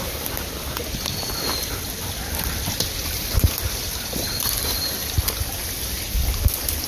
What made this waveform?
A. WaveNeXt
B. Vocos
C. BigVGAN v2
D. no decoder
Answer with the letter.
C